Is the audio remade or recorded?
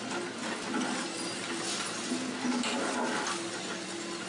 recorded